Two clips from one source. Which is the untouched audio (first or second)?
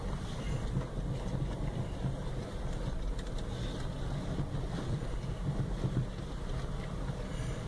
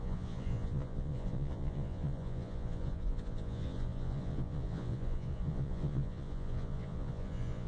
first